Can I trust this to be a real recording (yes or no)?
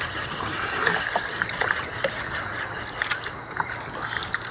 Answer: yes